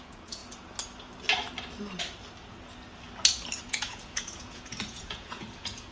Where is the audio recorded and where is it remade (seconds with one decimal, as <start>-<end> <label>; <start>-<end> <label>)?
0.0-0.4 remade; 0.4-3.6 recorded; 3.6-5.9 remade